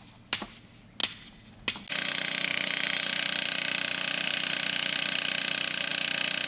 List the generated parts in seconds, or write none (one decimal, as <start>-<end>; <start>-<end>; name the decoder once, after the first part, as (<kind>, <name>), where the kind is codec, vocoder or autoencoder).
none